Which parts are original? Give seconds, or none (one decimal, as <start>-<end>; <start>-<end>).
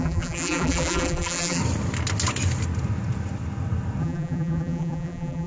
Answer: 1.6-4.0